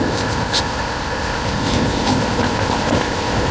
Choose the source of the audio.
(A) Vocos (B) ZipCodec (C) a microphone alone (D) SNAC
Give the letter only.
B